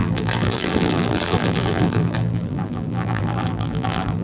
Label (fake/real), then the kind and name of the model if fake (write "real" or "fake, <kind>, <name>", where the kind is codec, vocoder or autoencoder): fake, vocoder, BigVGAN v2